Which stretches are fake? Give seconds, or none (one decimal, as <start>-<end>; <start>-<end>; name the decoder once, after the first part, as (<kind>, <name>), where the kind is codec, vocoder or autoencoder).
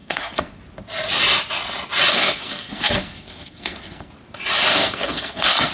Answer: 0.0-0.6 (codec, SNAC); 2.1-4.1; 4.7-5.7